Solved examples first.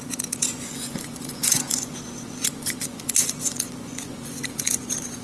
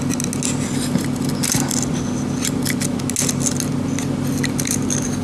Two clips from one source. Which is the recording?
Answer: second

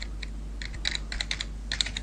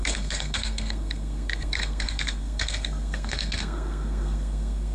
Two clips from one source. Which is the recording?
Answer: first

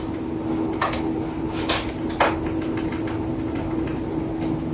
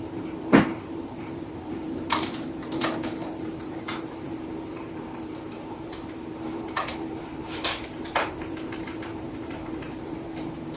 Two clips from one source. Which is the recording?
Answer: first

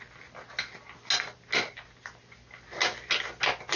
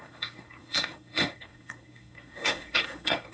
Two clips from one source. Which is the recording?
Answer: first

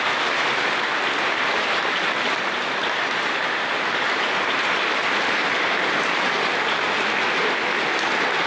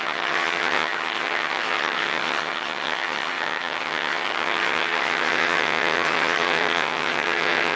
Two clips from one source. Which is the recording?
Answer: first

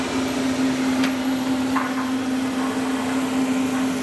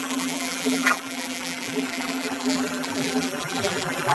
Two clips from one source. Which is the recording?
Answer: first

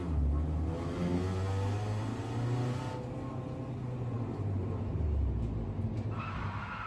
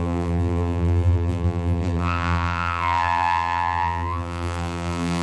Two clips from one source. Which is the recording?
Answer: first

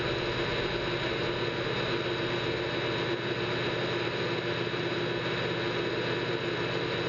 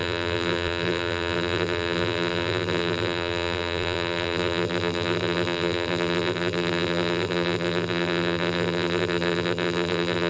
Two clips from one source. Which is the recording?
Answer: first